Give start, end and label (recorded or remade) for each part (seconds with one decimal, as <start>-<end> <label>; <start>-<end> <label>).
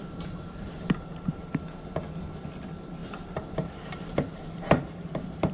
0.0-1.5 remade; 1.5-3.0 recorded; 3.0-5.5 remade